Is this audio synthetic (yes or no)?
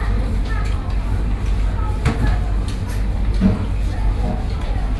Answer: no